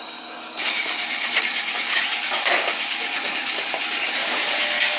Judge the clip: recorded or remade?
remade